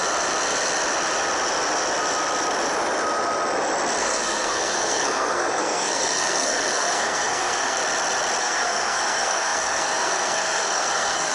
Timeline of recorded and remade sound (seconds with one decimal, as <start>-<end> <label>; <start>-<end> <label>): 0.0-4.0 recorded; 4.0-7.8 remade; 7.8-8.4 recorded; 8.4-11.3 remade